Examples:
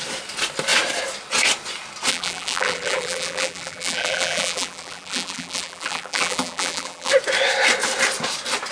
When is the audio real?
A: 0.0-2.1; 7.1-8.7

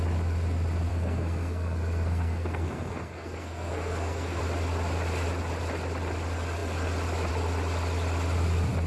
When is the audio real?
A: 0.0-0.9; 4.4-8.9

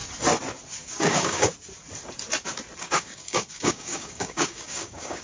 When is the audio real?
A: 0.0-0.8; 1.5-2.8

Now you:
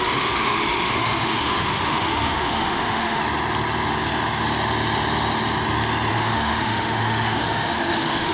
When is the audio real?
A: 3.2-6.1